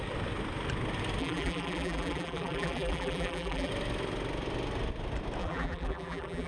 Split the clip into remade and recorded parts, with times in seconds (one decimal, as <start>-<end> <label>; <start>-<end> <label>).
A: 0.0-1.2 recorded; 1.2-3.7 remade; 3.7-5.4 recorded; 5.4-6.5 remade